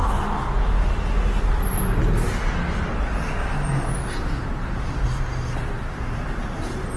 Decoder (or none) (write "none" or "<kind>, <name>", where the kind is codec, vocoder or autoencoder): none